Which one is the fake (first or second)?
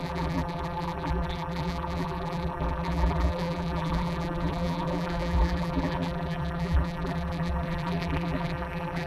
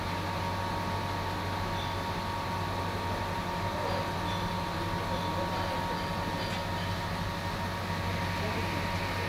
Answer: first